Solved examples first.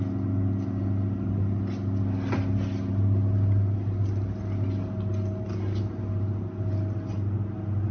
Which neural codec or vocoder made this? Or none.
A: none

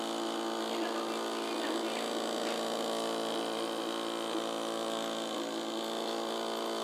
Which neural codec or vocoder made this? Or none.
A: none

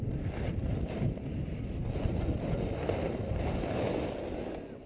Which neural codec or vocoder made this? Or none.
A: none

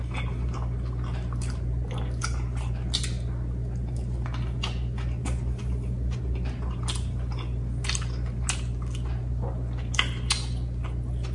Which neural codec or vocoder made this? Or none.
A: none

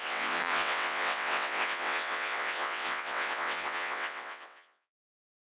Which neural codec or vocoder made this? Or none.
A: vocoder, WaveNeXt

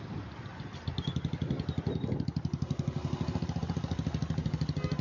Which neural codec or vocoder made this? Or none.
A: none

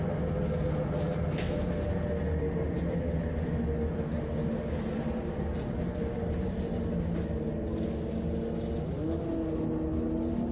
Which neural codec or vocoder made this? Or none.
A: none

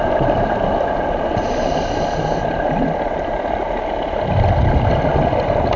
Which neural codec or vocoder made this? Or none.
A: none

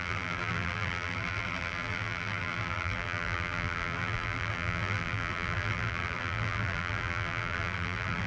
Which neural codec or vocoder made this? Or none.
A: vocoder, BigVGAN v2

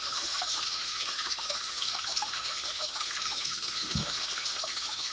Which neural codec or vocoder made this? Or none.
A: autoencoder, DAC-VAE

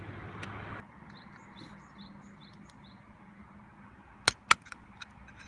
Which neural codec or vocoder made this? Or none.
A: none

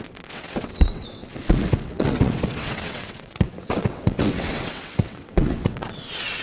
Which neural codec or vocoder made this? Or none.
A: vocoder, WaveNeXt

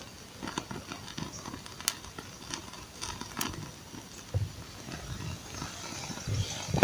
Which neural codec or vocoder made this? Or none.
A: none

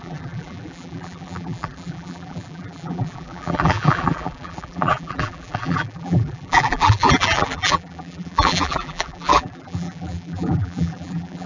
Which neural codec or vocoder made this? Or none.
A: vocoder, BigVGAN v2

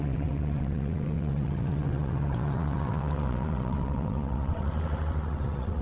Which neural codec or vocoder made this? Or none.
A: vocoder, WaveNeXt